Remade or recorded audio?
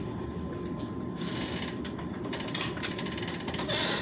remade